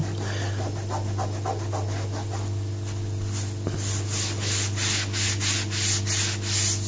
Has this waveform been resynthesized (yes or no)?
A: no